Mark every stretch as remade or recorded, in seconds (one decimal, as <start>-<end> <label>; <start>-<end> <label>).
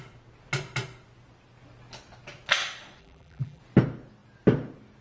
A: 0.0-3.0 recorded; 3.0-3.6 remade; 3.6-5.0 recorded